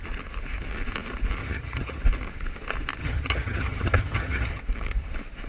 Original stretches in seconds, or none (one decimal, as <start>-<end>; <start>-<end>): 0.0-1.4; 2.0-3.0; 4.6-5.5